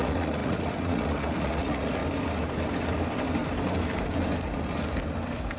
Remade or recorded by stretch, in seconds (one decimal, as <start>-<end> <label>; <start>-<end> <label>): 0.0-2.0 remade; 2.0-5.6 recorded